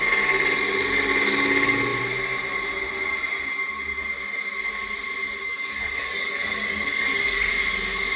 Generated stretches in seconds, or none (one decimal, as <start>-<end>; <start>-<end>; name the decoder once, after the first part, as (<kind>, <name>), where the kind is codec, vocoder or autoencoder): 5.4-7.5 (codec, DAC)